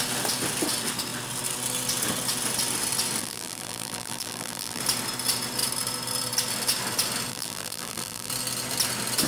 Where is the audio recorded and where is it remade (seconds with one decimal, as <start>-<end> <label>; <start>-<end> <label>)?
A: 0.0-3.2 recorded; 3.2-4.8 remade; 4.8-7.3 recorded; 7.3-8.3 remade; 8.3-9.3 recorded